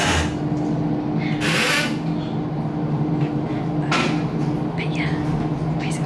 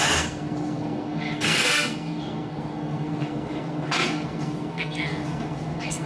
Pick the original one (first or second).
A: first